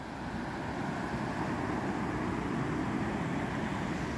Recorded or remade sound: recorded